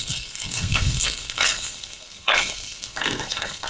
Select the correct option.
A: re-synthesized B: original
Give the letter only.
A